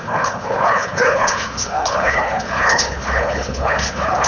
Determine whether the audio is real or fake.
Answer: fake